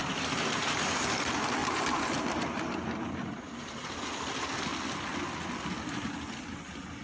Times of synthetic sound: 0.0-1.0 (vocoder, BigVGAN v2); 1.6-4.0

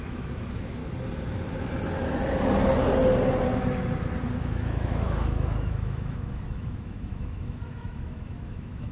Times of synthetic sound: 0.0-0.8 (autoencoder, DAC-VAE); 4.4-8.9